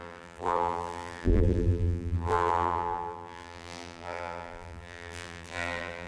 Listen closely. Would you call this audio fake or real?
fake